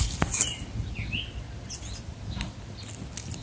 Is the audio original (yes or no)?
yes